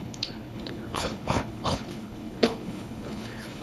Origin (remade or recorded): remade